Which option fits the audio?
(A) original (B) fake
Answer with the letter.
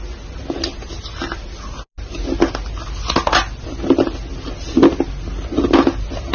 A